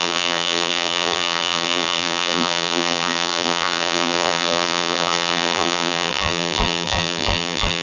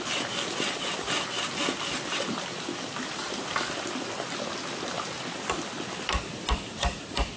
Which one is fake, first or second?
first